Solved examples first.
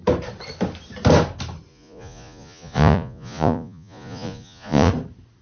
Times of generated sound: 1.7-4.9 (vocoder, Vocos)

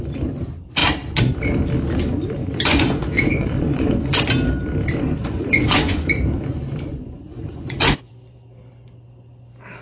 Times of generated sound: 2.4-4.2 (vocoder, Vocos); 5.2-6.2; 6.9-8.1

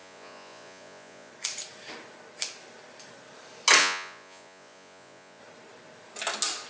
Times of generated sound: 0.0-1.3 (vocoder, Vocos); 3.8-5.4

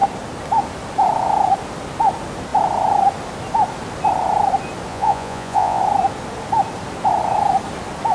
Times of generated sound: 4.9-5.8 (vocoder, Vocos)

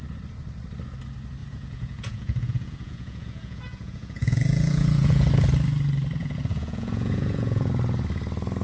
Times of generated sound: 1.4-5.3 (vocoder, Vocos); 6.2-7.7

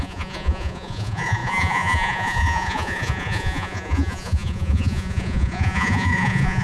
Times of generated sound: 0.0-6.6 (vocoder, Vocos)

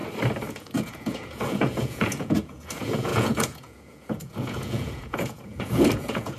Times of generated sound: 0.5-6.4 (vocoder, Vocos)

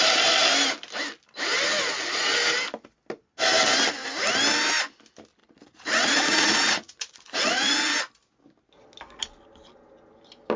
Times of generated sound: 5.4-8.0 (vocoder, Vocos)